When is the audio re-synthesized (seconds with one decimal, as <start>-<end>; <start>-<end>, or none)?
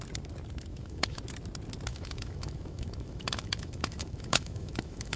0.7-1.2; 1.9-5.2